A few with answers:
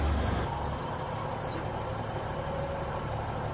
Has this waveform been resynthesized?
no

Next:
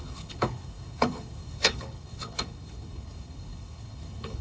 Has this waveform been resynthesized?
yes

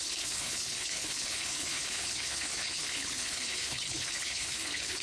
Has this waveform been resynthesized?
yes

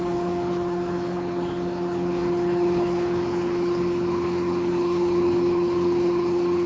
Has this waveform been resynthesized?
yes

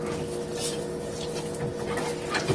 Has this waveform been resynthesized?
no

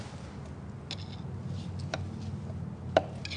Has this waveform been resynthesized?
no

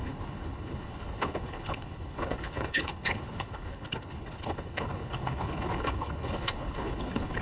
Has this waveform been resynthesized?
yes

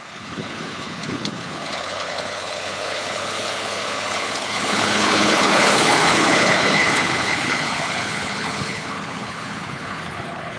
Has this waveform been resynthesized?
yes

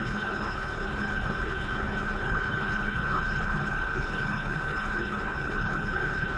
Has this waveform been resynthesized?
yes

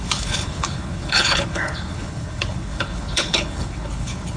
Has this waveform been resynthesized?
yes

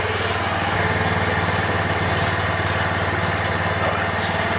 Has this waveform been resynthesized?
no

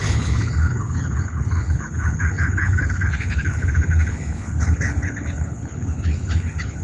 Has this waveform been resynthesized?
yes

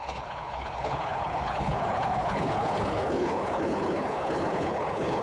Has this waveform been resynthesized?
yes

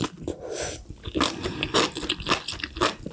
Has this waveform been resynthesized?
no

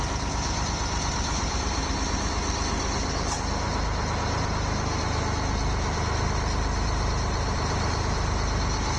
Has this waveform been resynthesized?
no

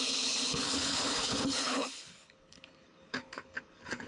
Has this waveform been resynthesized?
yes